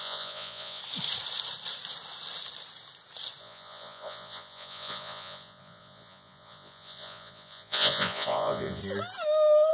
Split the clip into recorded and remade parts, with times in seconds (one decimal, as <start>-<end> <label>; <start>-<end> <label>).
0.0-0.8 remade; 0.8-3.4 recorded; 3.4-8.8 remade; 8.8-9.7 recorded